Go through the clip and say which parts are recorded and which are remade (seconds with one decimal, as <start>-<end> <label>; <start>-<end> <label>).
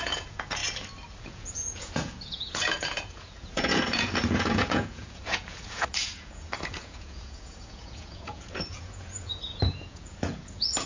0.0-0.6 remade; 0.6-1.2 recorded; 1.2-10.9 remade